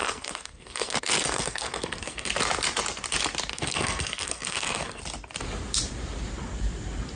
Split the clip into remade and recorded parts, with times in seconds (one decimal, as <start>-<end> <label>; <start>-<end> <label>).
0.0-2.3 remade; 2.3-3.5 recorded; 3.5-5.0 remade; 5.0-7.2 recorded